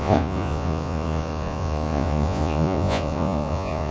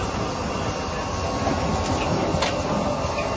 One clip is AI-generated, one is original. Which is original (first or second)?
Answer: second